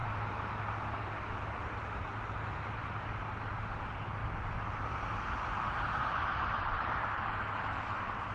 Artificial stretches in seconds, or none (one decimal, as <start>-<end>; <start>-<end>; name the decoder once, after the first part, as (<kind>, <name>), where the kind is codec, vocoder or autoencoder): none

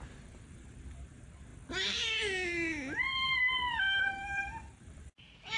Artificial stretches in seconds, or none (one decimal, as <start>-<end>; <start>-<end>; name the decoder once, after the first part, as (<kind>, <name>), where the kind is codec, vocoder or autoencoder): 0.0-1.5 (vocoder, BigVGAN v2); 4.0-5.6